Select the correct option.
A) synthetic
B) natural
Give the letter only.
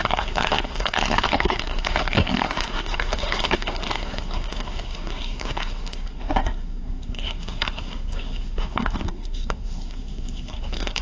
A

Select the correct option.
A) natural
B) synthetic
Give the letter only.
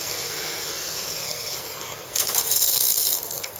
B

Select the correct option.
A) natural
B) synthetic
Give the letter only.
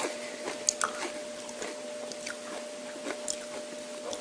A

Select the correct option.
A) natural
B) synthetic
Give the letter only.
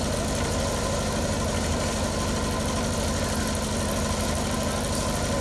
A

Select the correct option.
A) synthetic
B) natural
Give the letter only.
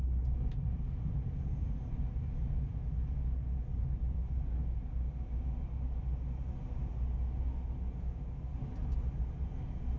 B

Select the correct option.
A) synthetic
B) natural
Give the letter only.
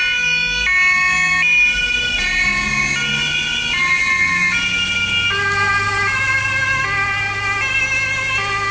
B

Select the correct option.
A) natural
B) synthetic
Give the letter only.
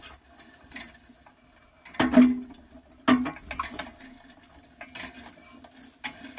A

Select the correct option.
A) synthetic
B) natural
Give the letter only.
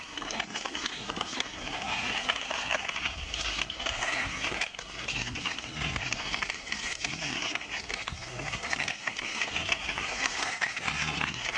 A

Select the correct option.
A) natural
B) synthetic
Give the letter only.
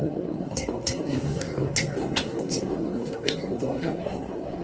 B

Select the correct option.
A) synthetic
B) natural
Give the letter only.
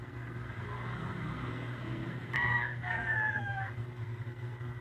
A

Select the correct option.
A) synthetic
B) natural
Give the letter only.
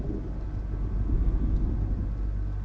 B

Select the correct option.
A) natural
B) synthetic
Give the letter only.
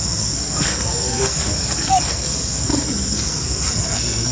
B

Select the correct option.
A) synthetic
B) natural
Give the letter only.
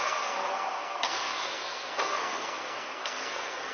A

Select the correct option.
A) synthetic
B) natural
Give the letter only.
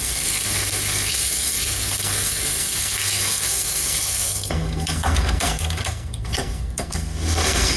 A